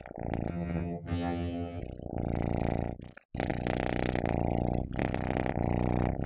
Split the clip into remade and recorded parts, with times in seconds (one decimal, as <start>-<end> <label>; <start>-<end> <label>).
0.0-0.5 recorded; 0.5-1.8 remade; 1.8-6.3 recorded